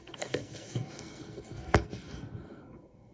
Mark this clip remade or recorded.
remade